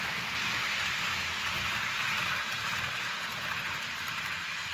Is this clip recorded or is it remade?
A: recorded